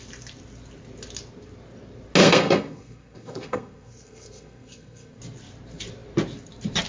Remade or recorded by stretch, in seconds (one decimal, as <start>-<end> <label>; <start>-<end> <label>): 0.0-2.2 recorded; 2.2-5.2 remade; 5.2-6.9 recorded